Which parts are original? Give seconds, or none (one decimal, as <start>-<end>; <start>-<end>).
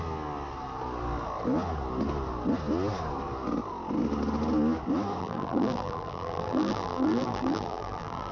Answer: 0.0-5.2